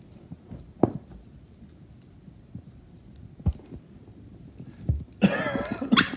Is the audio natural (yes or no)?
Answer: yes